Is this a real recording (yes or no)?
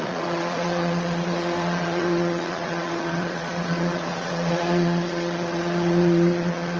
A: no